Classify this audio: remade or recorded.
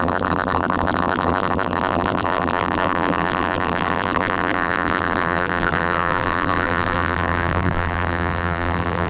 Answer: remade